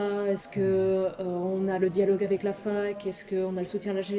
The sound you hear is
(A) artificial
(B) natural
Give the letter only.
B